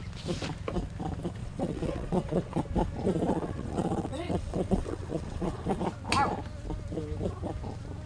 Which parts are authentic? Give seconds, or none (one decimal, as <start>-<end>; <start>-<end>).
0.0-1.4; 2.6-3.3; 5.8-8.1